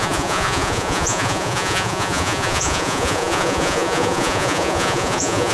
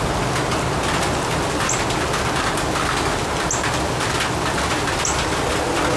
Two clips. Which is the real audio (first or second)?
second